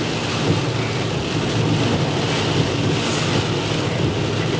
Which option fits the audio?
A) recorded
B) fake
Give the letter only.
A